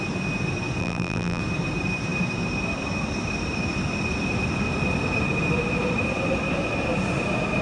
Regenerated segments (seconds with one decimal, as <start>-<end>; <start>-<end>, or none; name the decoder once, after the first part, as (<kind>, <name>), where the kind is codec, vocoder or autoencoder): 0.8-1.4 (vocoder, BigVGAN v2)